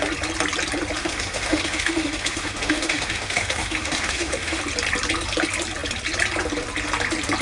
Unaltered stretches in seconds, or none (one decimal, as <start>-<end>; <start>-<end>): 0.0-1.0; 4.6-7.4